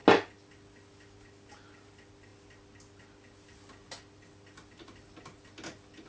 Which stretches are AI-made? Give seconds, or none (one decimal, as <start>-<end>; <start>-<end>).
none